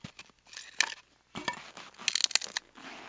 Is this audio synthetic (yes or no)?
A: no